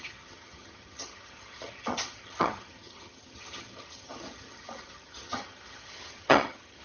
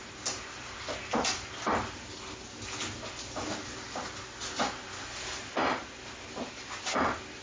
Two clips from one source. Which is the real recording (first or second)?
second